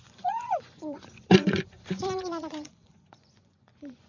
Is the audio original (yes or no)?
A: no